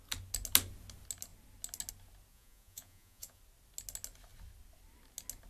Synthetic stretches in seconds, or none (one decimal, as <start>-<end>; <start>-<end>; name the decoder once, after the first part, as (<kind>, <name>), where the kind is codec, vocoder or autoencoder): 2.3-3.4 (vocoder, Vocos)